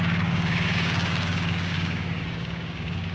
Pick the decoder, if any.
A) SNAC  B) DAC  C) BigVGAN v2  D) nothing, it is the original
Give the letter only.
B